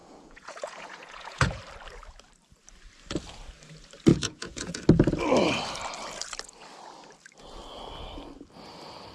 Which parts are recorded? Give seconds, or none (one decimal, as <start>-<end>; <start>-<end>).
1.6-4.1; 4.8-9.1